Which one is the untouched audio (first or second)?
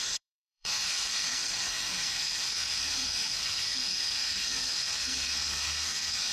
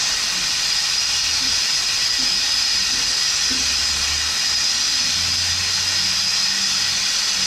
second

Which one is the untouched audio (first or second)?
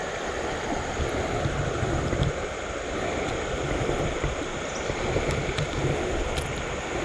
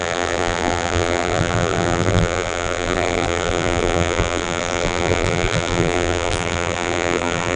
first